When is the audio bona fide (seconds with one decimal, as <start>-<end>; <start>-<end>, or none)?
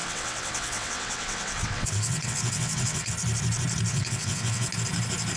3.1-3.9; 4.7-5.4